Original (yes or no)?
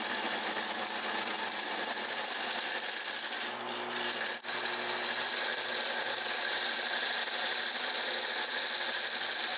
yes